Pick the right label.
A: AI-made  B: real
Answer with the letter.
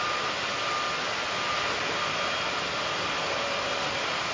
B